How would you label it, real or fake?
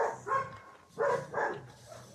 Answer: real